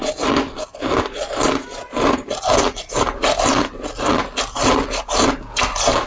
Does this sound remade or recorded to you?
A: recorded